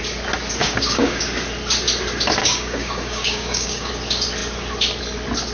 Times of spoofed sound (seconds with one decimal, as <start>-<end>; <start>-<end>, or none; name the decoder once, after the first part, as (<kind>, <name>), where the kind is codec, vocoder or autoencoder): 0.6-1.2 (codec, DAC); 2.4-3.9